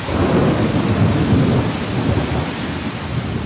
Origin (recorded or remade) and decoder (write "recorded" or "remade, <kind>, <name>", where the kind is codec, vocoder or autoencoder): recorded